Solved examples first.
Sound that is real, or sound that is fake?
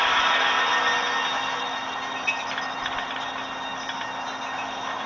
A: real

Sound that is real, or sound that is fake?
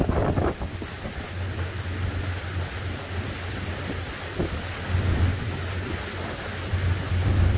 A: real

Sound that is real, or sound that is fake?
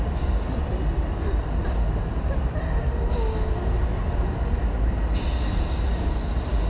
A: real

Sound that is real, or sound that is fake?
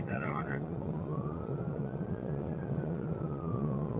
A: fake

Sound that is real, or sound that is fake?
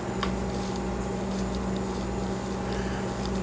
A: real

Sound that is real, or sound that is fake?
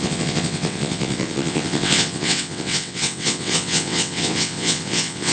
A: fake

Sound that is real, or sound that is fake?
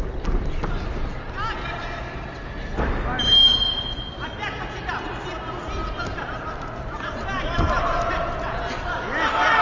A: real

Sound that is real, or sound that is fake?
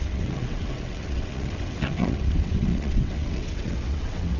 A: fake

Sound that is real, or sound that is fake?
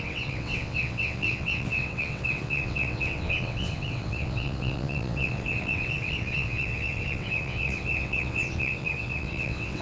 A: fake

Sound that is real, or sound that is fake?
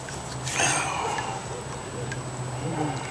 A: real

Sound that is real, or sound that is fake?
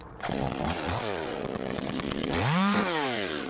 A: fake